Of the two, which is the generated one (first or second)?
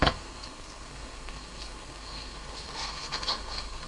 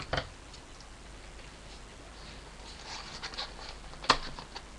first